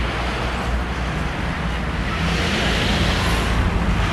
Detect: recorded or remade recorded